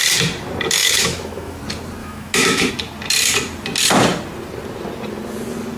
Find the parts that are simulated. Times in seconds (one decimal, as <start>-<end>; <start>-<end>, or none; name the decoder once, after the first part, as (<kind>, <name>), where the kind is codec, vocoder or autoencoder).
0.8-1.6 (autoencoder, DAC-VAE); 2.0-2.7